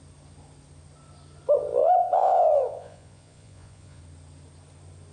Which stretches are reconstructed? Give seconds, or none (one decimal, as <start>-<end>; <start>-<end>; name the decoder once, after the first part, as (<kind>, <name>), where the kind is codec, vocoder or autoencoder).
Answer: 1.8-4.0 (vocoder, Vocos)